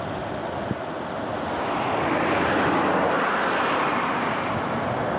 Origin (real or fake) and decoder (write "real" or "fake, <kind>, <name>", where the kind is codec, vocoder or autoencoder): real